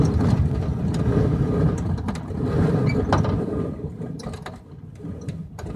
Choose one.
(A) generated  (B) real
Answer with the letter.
B